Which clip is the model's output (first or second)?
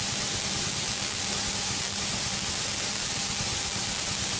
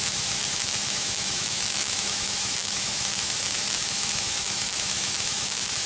second